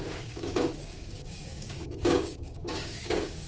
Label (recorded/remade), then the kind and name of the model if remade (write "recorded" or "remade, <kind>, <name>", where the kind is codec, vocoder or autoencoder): remade, codec, DAC